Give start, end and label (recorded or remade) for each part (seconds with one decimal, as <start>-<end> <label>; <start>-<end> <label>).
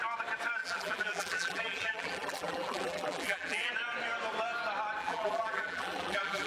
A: 0.0-0.6 recorded; 0.6-3.7 remade; 3.7-5.0 recorded; 5.0-6.5 remade